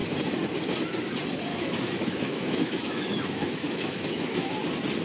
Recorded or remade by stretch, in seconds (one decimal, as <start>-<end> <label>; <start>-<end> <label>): 0.0-1.5 recorded; 1.5-4.5 remade; 4.5-5.0 recorded